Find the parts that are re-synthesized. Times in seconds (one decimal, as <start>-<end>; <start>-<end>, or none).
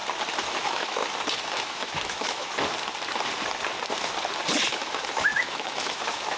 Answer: 0.5-1.0; 1.5-2.5; 4.7-6.4